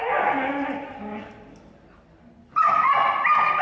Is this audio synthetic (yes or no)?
no